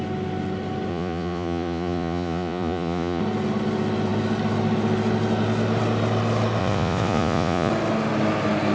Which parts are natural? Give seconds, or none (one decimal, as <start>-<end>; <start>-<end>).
0.0-0.9; 3.2-6.6; 7.7-8.7

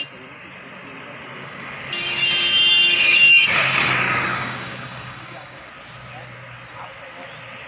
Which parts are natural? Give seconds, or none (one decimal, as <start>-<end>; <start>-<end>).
0.0-1.3; 5.7-7.7